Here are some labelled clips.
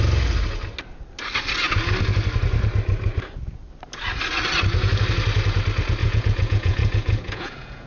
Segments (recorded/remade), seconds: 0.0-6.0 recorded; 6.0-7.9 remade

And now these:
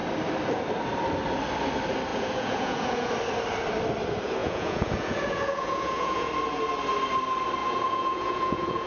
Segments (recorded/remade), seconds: 0.0-2.1 recorded; 2.1-3.1 remade; 3.1-4.4 recorded; 4.4-6.3 remade; 6.3-7.6 recorded; 7.6-8.9 remade

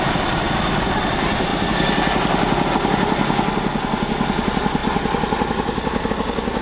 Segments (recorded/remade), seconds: 0.0-6.6 recorded

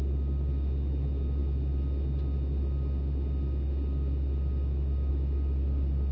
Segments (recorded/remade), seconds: 0.0-6.1 recorded

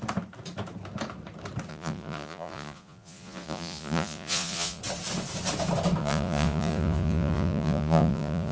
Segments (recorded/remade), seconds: 0.0-1.7 recorded; 1.7-4.8 remade; 4.8-6.0 recorded; 6.0-8.5 remade

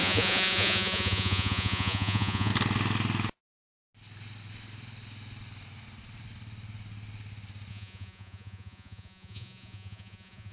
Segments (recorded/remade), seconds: 0.0-2.5 remade; 2.5-7.7 recorded; 7.7-10.5 remade